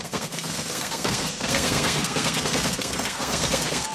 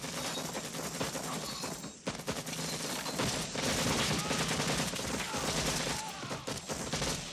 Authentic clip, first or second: second